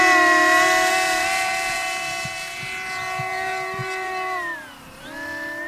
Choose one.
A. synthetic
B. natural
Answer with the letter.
A